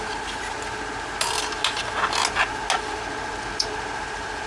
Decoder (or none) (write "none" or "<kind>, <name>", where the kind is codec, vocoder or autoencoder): none